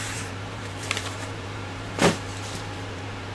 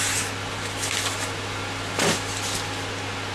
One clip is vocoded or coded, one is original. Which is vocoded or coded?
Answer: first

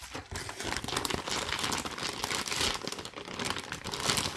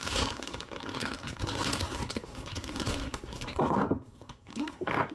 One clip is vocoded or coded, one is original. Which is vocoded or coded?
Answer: second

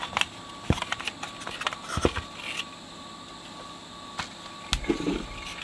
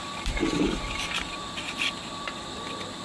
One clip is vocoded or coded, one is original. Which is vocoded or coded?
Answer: second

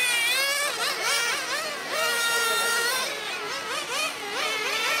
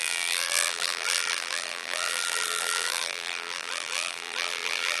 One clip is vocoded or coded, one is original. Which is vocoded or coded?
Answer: second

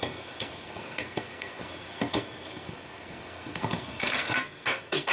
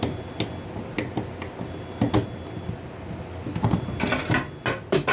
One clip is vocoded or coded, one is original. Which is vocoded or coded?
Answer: first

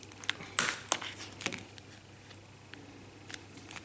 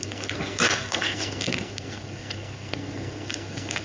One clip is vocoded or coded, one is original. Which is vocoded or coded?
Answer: second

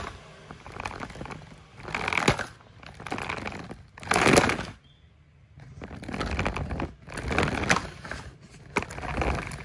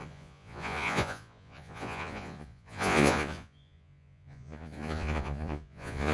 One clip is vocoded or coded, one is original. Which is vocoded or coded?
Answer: second